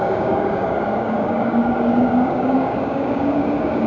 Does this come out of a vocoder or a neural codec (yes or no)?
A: yes